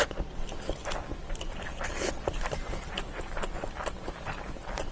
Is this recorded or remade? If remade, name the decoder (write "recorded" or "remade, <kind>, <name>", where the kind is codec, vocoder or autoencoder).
recorded